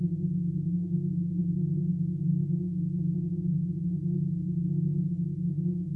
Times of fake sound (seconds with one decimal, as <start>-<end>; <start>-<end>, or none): 2.4-3.7